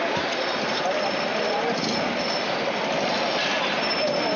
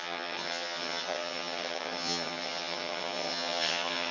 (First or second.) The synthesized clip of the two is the second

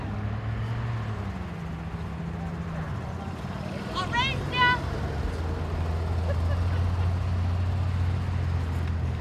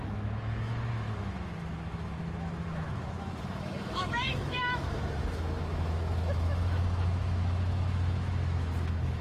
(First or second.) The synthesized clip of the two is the second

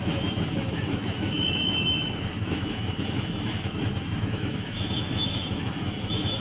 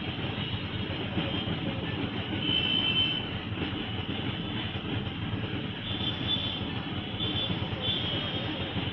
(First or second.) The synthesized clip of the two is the first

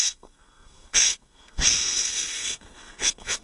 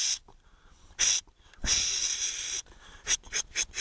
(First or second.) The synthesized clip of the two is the first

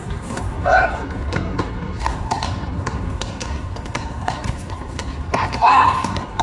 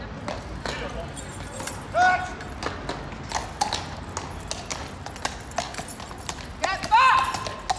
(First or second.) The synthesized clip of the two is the first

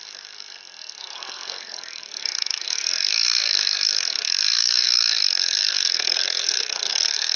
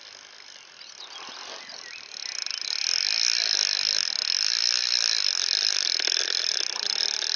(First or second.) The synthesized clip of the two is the first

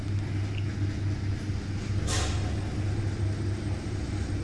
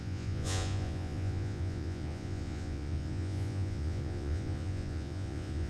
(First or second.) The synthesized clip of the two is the second